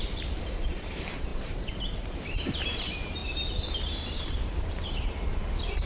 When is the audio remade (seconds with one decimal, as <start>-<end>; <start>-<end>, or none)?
0.0-3.2; 4.2-5.9